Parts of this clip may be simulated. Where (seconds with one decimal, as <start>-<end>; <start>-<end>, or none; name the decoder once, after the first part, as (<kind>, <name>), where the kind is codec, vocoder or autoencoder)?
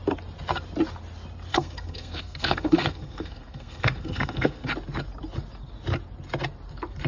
1.5-4.7 (codec, SNAC)